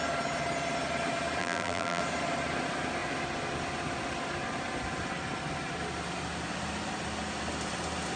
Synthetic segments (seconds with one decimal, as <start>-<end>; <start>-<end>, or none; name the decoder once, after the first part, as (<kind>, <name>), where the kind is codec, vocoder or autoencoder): 1.4-2.0 (vocoder, BigVGAN v2)